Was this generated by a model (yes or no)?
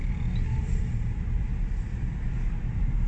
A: no